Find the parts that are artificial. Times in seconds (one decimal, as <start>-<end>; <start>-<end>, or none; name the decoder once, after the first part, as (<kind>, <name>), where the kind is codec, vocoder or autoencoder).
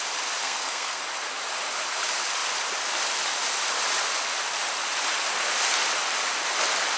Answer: 0.4-1.0 (codec, SNAC)